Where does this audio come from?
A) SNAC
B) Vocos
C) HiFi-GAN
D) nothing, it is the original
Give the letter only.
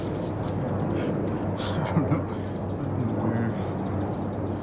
D